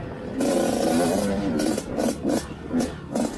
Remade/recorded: recorded